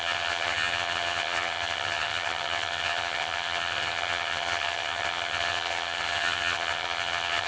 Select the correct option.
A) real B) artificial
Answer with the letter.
B